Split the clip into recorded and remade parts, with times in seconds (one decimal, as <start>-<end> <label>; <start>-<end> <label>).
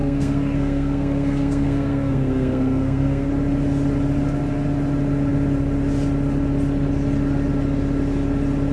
0.0-3.3 remade; 3.3-8.7 recorded